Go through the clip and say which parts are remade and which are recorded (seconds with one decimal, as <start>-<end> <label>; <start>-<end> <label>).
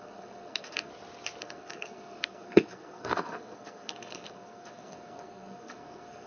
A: 0.0-0.9 remade; 0.9-1.4 recorded; 1.4-6.3 remade